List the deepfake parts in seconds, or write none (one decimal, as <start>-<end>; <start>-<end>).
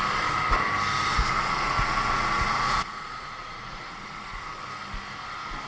1.1-4.4